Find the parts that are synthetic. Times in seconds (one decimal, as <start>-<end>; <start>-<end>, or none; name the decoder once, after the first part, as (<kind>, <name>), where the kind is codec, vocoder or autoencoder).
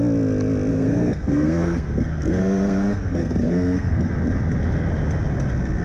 0.7-4.1 (codec, SNAC)